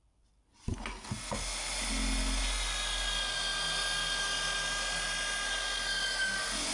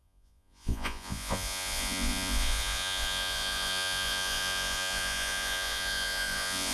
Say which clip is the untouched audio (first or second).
first